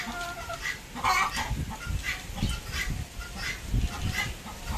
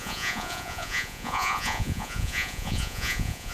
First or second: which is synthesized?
second